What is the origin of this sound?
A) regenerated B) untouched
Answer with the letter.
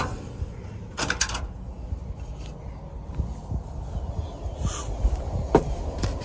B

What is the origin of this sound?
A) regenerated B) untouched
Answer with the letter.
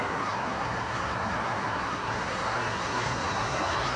A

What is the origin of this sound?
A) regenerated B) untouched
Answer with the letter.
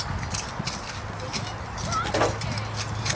B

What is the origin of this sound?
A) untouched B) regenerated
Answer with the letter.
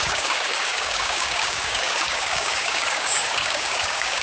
B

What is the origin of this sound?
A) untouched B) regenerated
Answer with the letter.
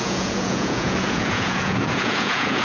B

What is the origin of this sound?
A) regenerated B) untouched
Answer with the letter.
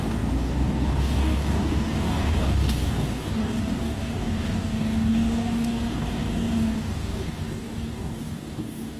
A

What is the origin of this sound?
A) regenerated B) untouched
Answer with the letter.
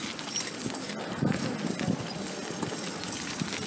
B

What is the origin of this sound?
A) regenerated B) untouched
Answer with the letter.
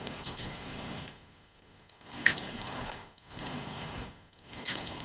A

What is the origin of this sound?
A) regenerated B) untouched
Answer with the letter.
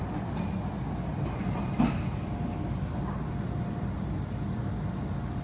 B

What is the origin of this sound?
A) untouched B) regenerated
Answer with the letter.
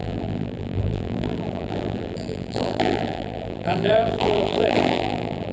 B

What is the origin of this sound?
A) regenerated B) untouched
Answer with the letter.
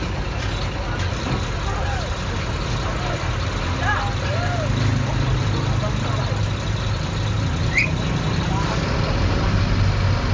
B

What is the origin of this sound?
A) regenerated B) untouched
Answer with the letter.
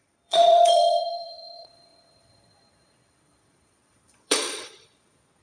A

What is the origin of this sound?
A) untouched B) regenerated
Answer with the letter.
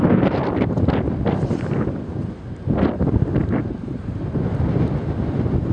A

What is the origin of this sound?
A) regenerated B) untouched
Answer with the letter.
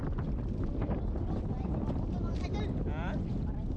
B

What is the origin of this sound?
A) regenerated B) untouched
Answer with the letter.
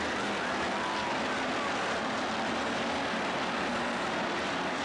B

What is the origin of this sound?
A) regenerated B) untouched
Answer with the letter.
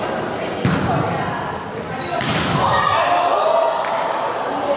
B